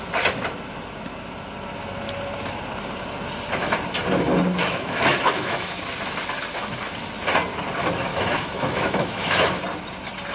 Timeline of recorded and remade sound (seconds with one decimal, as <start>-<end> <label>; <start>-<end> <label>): 0.0-4.6 recorded; 4.6-5.8 remade; 5.8-8.1 recorded; 8.1-9.6 remade; 9.6-10.3 recorded